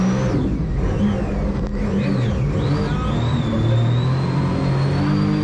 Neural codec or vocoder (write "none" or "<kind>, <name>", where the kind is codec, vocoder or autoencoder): none